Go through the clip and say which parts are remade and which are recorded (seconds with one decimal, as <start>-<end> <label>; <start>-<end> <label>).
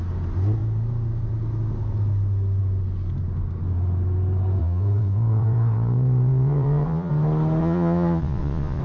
0.0-4.6 recorded; 4.6-7.1 remade; 7.1-7.6 recorded; 7.6-8.8 remade